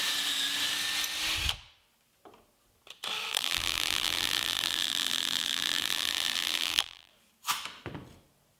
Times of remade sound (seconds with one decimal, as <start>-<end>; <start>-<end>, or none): 3.3-7.1

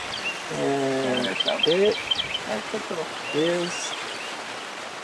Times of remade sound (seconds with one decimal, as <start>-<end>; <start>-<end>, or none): 2.0-5.0

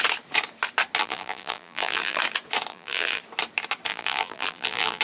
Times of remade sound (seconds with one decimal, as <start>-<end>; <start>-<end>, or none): 1.0-2.2; 2.7-3.2; 3.9-5.0

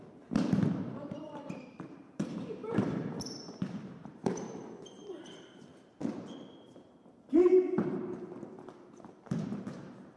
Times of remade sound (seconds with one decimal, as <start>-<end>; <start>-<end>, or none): 0.0-5.7; 6.3-10.2

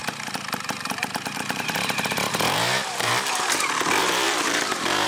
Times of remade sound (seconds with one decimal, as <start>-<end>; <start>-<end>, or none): 0.0-3.1; 4.0-5.1

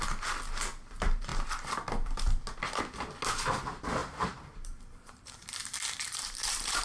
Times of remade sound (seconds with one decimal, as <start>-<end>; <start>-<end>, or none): 4.0-6.8